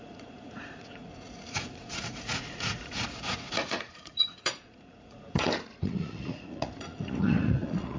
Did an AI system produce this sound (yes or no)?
yes